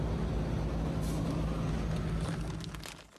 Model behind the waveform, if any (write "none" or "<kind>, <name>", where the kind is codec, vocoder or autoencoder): none